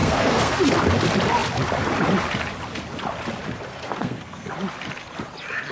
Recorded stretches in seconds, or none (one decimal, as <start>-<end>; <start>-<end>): 0.6-3.7; 4.5-5.7